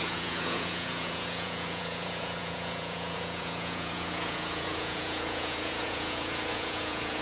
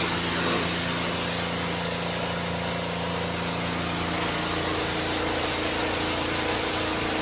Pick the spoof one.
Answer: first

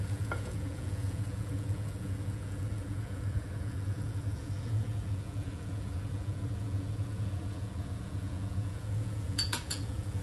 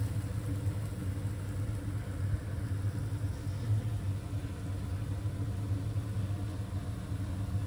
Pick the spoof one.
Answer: first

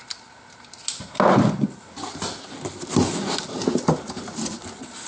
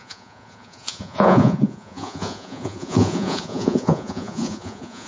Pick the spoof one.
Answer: second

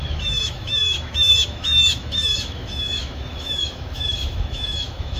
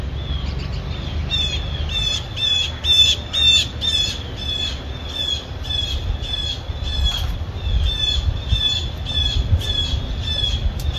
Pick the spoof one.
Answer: first